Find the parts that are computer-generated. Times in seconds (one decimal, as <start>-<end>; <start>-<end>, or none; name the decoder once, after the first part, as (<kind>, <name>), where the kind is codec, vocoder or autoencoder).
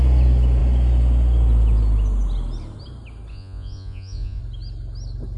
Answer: 3.3-4.4 (vocoder, Vocos)